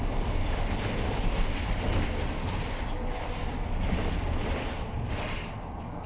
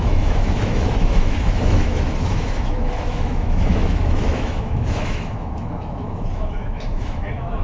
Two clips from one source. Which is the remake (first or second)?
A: second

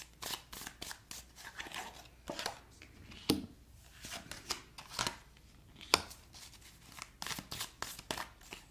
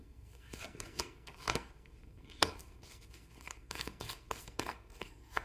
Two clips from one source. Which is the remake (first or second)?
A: second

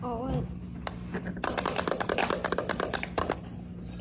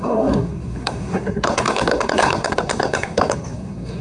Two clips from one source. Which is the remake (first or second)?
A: second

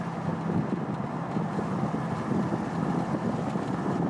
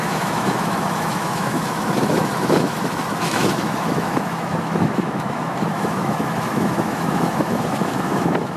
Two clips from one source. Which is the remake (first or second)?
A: second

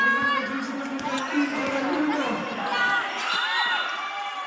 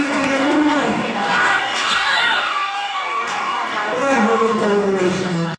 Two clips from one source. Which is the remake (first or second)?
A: second